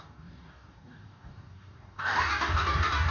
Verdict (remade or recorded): remade